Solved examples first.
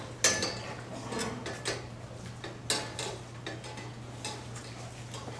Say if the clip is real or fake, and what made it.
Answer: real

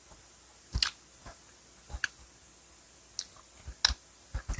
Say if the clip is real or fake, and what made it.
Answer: real